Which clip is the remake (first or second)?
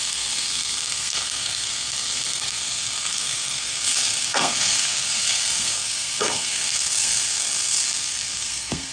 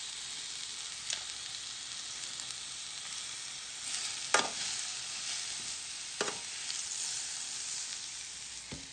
first